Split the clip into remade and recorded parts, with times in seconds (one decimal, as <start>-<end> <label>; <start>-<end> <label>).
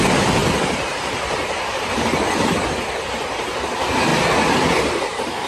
0.0-0.4 recorded; 0.4-3.5 remade; 3.5-5.5 recorded